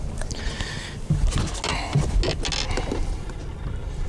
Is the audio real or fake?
real